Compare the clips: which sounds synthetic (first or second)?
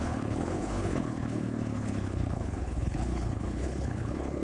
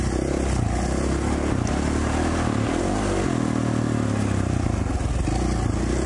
first